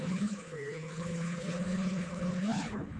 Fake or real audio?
fake